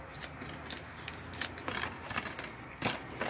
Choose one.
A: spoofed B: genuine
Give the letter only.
B